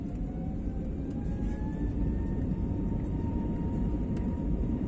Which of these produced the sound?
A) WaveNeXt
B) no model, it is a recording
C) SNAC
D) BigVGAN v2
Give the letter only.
D